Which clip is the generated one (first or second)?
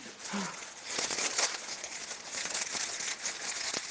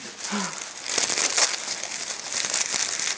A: first